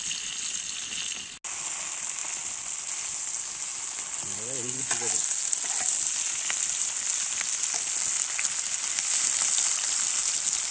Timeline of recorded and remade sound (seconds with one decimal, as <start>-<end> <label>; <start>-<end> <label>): 0.0-10.7 recorded